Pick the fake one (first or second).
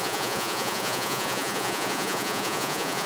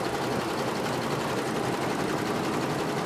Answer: first